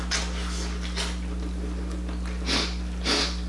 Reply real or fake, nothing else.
real